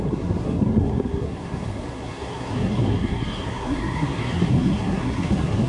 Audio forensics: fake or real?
fake